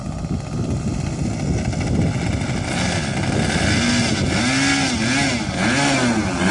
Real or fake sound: real